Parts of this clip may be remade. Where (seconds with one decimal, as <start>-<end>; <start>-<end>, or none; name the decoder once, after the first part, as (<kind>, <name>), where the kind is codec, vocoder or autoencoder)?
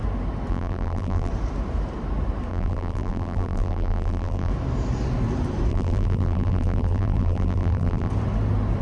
0.5-1.3 (vocoder, BigVGAN v2); 2.5-4.5; 5.7-8.1